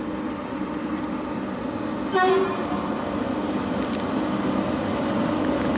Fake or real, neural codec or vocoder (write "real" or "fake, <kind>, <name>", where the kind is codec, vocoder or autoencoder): real